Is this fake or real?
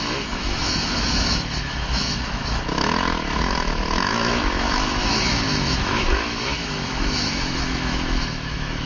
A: fake